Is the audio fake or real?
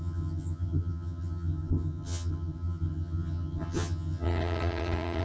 fake